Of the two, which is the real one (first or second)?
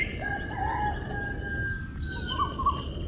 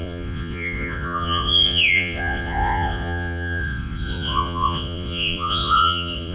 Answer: first